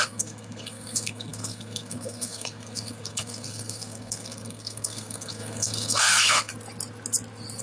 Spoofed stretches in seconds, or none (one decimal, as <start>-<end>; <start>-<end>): 0.0-6.5